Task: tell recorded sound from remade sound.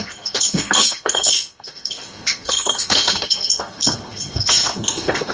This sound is remade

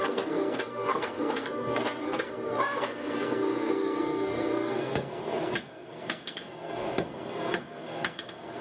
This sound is remade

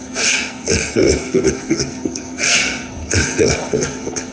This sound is remade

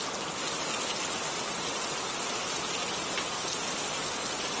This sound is recorded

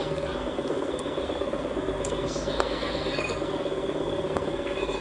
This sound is remade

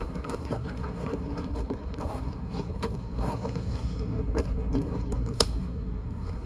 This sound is remade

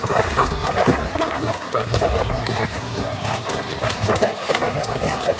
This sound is remade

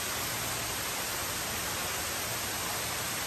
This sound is recorded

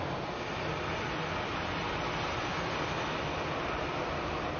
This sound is recorded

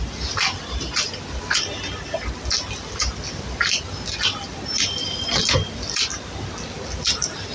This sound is recorded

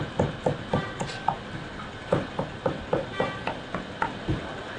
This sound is recorded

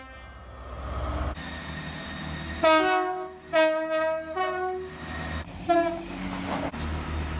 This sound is recorded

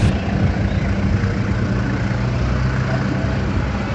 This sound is recorded